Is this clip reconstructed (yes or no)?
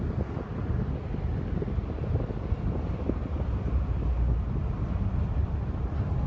no